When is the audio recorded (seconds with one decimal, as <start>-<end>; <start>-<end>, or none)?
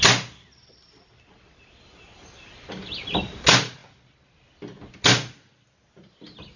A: 0.0-6.6